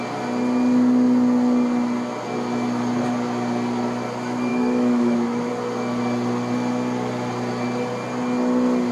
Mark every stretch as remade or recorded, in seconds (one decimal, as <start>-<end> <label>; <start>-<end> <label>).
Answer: 0.0-4.5 recorded; 4.5-5.5 remade; 5.5-8.9 recorded